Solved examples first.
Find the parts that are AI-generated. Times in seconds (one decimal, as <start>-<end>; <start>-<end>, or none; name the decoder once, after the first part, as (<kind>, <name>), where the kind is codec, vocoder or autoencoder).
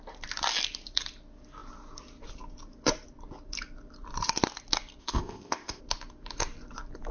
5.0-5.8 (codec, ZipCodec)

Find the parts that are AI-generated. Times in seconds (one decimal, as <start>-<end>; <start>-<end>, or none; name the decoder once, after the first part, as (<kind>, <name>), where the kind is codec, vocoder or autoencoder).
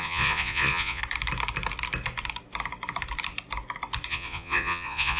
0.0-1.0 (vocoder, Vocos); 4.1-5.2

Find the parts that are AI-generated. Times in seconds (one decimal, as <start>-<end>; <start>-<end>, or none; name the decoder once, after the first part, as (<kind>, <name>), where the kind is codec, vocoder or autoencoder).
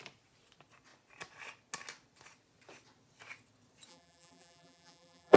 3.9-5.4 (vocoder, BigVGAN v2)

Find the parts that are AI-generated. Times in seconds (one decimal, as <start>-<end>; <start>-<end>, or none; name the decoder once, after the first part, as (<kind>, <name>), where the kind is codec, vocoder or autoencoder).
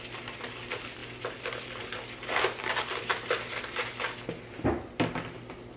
none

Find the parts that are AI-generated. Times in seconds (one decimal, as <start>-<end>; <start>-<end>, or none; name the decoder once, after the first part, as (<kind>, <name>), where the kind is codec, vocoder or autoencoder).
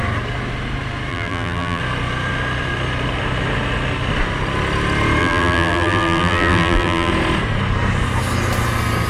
1.1-1.8 (vocoder, BigVGAN v2); 5.2-7.1